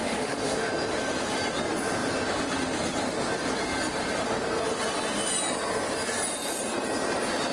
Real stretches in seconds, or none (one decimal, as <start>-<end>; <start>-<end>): 0.7-7.5